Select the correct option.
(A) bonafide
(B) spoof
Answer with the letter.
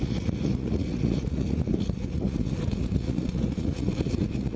B